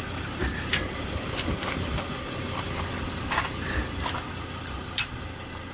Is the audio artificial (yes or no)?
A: no